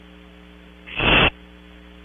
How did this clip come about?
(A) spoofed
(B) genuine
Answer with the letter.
B